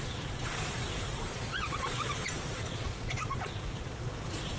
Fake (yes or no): yes